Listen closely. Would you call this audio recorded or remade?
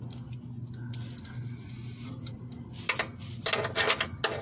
recorded